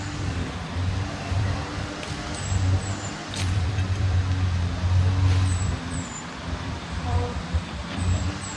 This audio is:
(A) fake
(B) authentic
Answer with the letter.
A